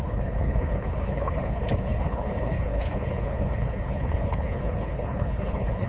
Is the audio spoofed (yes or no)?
yes